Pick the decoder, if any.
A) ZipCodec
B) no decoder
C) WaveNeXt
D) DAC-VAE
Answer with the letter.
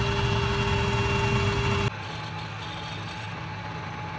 B